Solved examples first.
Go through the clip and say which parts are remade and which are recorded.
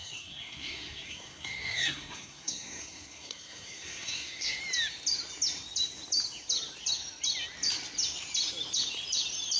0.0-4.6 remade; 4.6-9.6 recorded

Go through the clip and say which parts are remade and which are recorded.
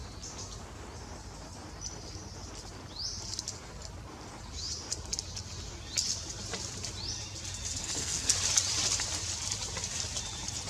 0.0-7.8 recorded; 7.8-8.3 remade; 8.3-10.7 recorded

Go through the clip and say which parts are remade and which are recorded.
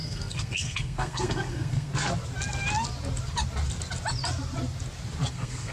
0.0-1.9 remade; 1.9-5.3 recorded; 5.3-5.7 remade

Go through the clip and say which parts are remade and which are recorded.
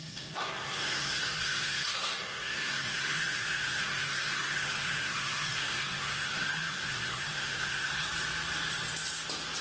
0.0-8.1 remade; 8.1-9.6 recorded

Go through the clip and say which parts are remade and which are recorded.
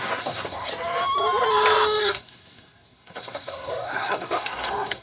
0.0-0.7 remade; 0.7-2.0 recorded; 2.0-5.0 remade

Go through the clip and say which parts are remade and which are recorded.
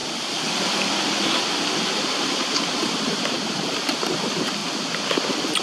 0.0-5.6 recorded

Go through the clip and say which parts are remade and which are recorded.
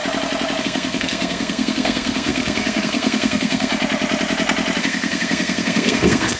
0.0-0.6 recorded; 0.6-3.7 remade; 3.7-4.8 recorded; 4.8-6.4 remade